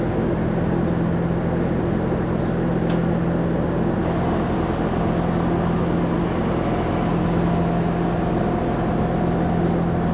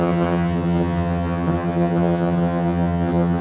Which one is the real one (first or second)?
first